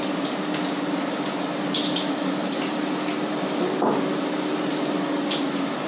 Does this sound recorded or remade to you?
recorded